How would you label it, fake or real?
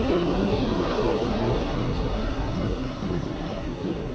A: fake